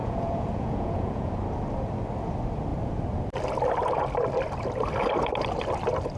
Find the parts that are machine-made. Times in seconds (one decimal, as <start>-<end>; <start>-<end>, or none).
0.0-1.3